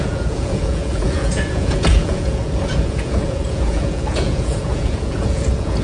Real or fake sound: fake